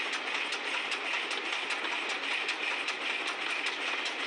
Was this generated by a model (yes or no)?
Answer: no